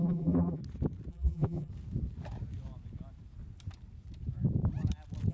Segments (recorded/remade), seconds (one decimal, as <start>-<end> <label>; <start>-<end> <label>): 0.0-0.6 remade; 0.6-1.1 recorded; 1.1-1.7 remade; 1.7-5.3 recorded